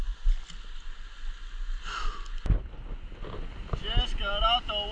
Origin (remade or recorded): recorded